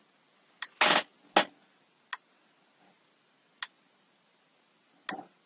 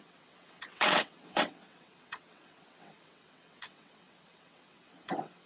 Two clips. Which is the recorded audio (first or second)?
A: first